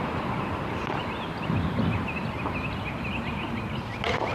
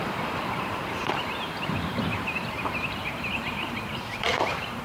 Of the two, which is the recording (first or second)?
first